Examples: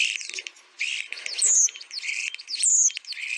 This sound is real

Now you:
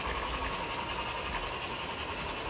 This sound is real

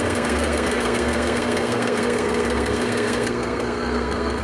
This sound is fake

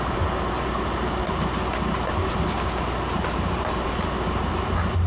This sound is real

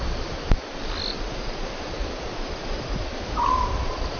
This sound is real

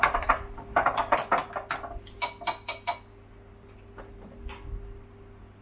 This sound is real